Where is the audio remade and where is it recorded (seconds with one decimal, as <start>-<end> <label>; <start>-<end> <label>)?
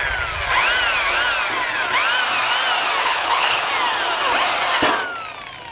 0.0-3.0 recorded; 3.0-3.7 remade; 3.7-5.7 recorded